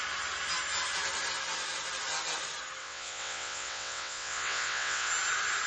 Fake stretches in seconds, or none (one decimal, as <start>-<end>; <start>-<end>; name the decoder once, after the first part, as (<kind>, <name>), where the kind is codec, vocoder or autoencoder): 2.8-5.1 (vocoder, WaveNeXt)